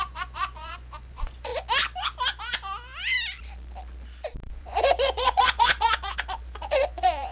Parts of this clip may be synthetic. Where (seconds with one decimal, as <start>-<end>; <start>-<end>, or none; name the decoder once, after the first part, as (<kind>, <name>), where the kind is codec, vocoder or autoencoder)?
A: 0.0-1.5 (vocoder, Vocos); 4.5-7.3